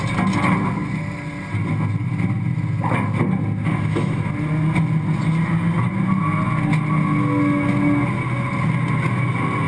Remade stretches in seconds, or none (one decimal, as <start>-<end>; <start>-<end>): 3.7-4.3